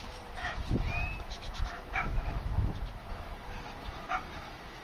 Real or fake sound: fake